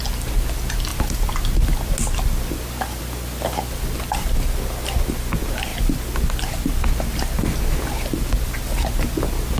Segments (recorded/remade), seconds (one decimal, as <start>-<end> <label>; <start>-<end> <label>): 0.0-9.6 recorded

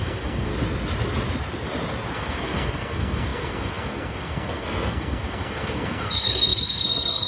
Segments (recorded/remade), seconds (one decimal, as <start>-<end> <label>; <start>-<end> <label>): 0.0-0.5 remade; 0.5-2.1 recorded; 2.1-7.3 remade